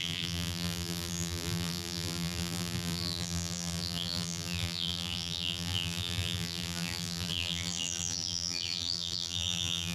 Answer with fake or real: fake